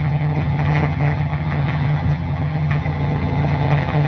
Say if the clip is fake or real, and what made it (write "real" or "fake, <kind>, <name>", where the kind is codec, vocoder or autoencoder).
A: fake, vocoder, HiFi-GAN